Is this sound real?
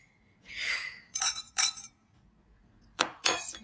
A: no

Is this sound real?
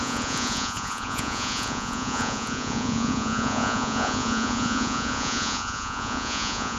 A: no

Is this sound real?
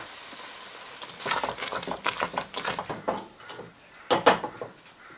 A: yes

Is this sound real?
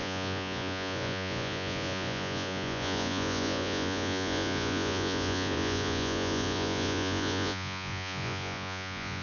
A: no